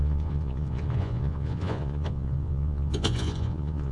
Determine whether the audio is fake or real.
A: fake